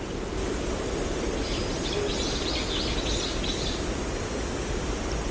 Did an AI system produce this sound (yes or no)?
no